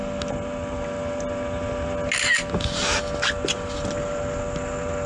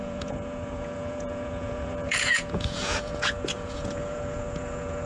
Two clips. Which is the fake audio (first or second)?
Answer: second